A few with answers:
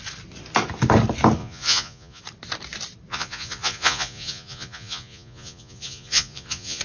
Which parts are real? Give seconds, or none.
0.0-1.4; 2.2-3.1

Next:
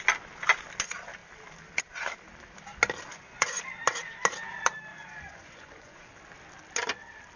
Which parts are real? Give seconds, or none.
0.0-3.1; 3.6-4.9; 6.2-7.4

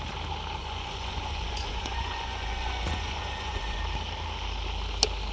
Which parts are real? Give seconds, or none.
0.0-0.6; 3.8-5.3

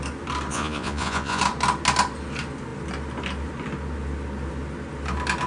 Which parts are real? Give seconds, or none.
0.0-0.5; 1.4-5.5